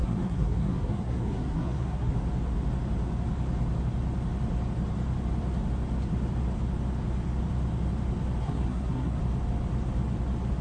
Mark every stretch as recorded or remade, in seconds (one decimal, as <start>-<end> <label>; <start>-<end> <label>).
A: 0.0-2.1 remade; 2.1-8.4 recorded; 8.4-9.2 remade; 9.2-10.6 recorded